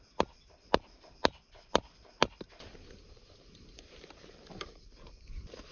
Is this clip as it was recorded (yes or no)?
no